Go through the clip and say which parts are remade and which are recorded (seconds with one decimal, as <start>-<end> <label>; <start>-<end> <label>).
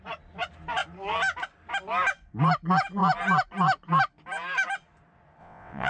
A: 0.0-5.4 recorded; 5.4-5.9 remade